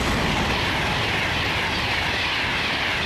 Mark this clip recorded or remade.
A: recorded